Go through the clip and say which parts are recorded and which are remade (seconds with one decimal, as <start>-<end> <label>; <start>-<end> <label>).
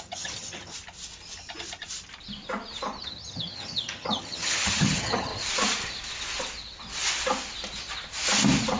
0.0-0.7 remade; 0.7-3.0 recorded; 3.0-5.3 remade; 5.3-8.8 recorded